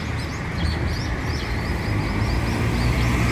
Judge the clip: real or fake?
real